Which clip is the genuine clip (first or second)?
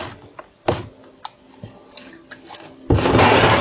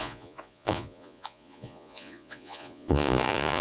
first